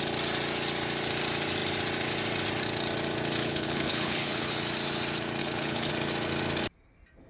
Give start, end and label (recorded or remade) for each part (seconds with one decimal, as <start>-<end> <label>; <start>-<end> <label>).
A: 0.0-3.4 recorded; 3.4-4.6 remade; 4.6-5.4 recorded; 5.4-5.9 remade; 5.9-7.3 recorded